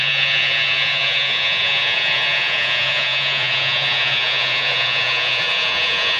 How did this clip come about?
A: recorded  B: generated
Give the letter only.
B